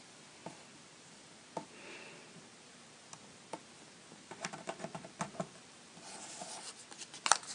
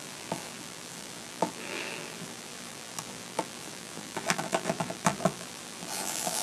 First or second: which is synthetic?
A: second